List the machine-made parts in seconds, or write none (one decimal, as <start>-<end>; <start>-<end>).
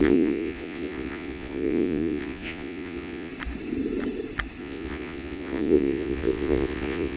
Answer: 0.0-3.3; 4.6-7.2